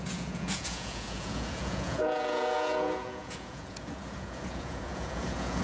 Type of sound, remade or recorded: remade